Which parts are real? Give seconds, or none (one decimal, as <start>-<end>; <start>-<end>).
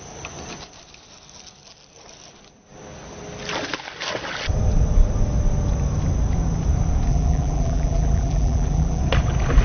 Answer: 0.0-7.1; 9.0-9.6